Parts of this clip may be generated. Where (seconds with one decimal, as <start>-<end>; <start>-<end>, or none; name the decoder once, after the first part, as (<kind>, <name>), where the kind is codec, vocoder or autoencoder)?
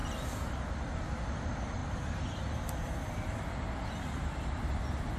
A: none